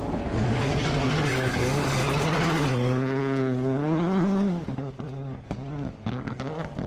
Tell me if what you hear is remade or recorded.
remade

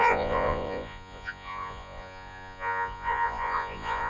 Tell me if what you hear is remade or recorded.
remade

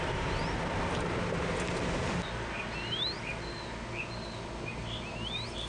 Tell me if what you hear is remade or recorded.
recorded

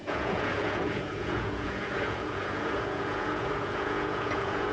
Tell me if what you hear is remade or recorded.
remade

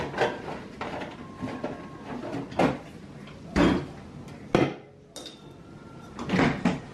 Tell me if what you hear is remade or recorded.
recorded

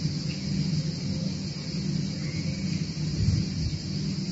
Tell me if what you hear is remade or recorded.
recorded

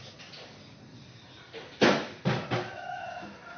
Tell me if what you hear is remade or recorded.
recorded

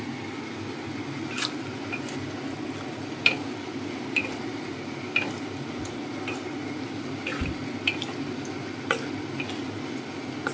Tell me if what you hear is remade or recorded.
recorded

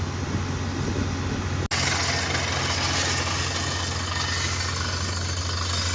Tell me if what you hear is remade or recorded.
recorded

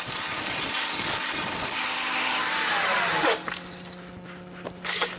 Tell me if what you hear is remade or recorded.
recorded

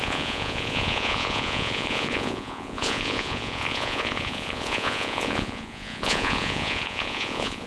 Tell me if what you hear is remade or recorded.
remade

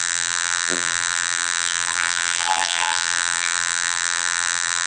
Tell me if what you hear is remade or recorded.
remade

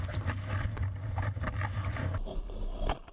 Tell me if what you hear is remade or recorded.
recorded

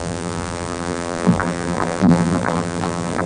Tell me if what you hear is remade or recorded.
remade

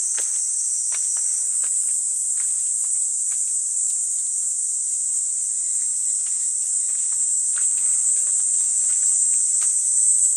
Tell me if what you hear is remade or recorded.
recorded